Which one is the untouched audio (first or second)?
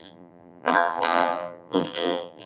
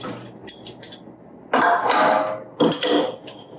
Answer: second